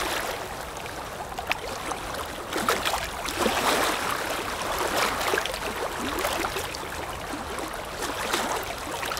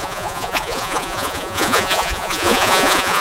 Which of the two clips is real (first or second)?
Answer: first